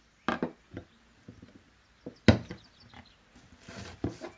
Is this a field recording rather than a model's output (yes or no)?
yes